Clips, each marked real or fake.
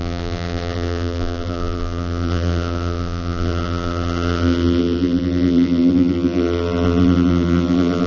fake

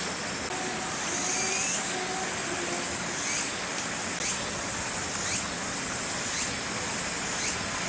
real